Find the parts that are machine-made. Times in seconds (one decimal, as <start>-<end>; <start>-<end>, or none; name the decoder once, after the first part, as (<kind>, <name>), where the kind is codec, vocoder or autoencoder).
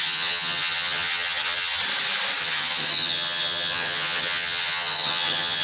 0.0-1.8 (vocoder, HiFi-GAN); 2.4-5.6